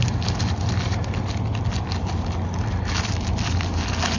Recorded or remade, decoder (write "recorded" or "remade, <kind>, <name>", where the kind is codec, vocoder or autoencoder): recorded